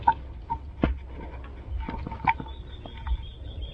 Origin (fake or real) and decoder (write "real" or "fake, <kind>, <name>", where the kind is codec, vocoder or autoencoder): real